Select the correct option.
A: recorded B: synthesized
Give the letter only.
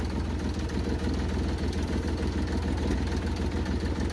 A